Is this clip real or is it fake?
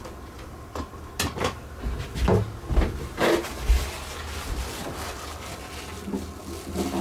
real